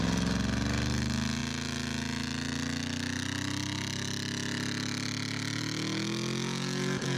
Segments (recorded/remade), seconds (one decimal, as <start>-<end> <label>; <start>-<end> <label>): 0.0-7.2 recorded